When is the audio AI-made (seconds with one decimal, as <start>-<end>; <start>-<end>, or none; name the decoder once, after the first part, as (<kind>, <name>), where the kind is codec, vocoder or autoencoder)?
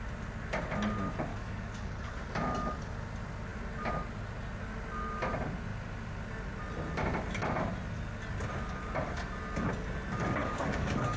1.3-2.1 (codec, DAC); 10.4-11.2